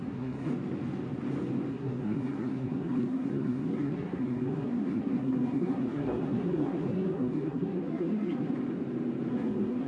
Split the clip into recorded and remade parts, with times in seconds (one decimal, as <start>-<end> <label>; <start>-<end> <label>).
0.0-0.5 remade; 0.5-1.7 recorded; 1.7-8.5 remade; 8.5-9.3 recorded; 9.3-9.9 remade